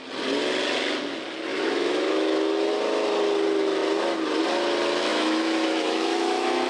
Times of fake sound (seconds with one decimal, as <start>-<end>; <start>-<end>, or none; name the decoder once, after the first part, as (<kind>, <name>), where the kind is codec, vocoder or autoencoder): 1.5-2.7 (autoencoder, DAC-VAE); 5.1-6.7